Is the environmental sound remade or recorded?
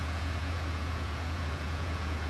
remade